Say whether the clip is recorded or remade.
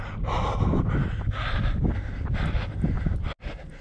recorded